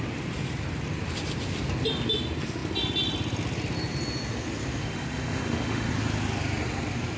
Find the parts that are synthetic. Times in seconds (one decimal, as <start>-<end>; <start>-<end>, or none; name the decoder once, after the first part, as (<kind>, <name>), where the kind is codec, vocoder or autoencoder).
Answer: 4.8-5.9 (autoencoder, DAC-VAE)